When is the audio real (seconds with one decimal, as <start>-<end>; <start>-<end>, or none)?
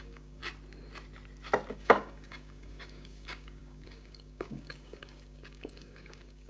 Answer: 0.4-1.7